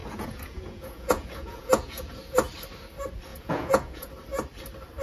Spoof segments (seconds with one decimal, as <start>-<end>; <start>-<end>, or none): 0.0-2.2; 3.3-4.1